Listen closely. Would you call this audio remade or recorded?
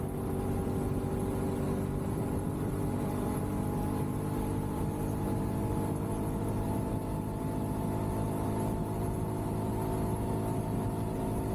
recorded